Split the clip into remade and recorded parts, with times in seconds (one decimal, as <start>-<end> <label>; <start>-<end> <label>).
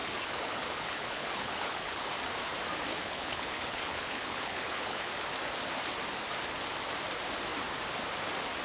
0.0-2.1 remade; 2.1-2.9 recorded; 2.9-5.1 remade; 5.1-8.6 recorded